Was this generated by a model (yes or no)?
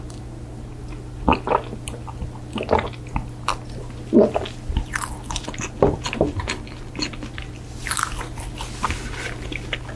no